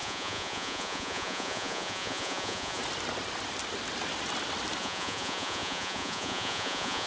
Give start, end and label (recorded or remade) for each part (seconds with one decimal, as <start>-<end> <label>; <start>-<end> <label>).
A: 0.0-2.8 remade; 2.8-4.8 recorded; 4.8-7.1 remade